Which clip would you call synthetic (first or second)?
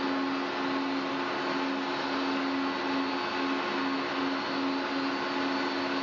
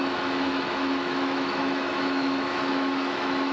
second